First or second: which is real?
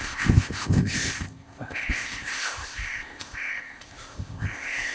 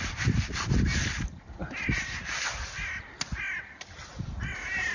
second